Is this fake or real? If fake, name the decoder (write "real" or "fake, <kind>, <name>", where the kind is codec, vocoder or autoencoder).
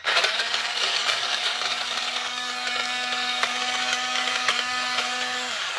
fake, codec, DAC